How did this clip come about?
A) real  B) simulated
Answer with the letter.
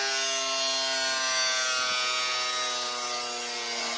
A